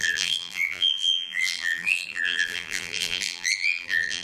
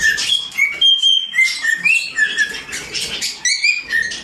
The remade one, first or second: first